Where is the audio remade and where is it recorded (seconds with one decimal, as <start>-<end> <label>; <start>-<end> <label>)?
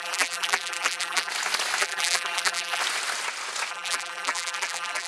0.0-1.3 remade; 1.3-1.8 recorded; 1.8-2.8 remade; 2.8-3.7 recorded; 3.7-5.1 remade